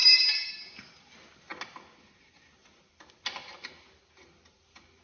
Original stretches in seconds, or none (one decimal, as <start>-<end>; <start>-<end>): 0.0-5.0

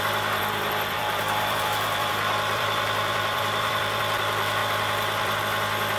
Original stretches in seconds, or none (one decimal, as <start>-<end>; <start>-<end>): 0.0-0.4; 4.0-4.6; 5.4-6.0

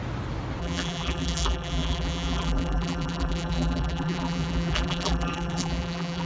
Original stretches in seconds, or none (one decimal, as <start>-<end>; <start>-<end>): 0.0-0.6

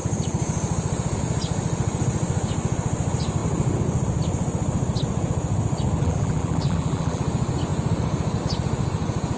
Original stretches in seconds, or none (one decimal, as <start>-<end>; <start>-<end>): 0.0-6.0; 7.2-9.4

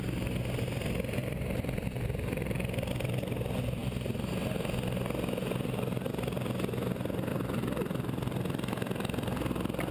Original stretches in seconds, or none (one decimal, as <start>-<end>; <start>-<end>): 0.0-1.2; 2.9-7.3; 9.5-9.9

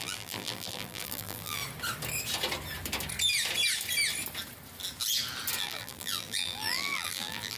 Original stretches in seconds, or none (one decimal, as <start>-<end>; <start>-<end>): 1.6-5.6

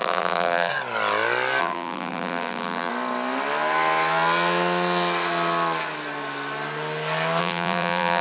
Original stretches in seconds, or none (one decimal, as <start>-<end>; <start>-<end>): 0.7-1.6; 2.9-7.4